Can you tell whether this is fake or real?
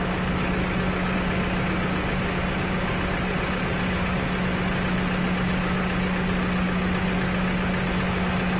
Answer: real